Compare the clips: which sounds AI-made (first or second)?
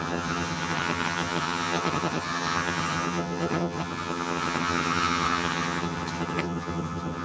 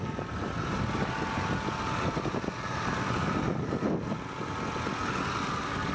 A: first